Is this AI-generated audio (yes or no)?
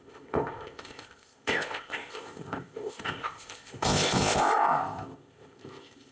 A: yes